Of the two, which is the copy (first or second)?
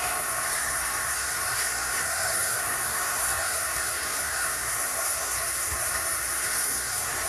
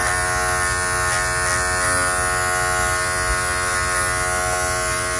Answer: first